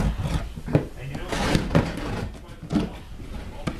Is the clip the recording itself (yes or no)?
yes